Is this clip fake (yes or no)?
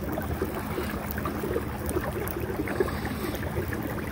no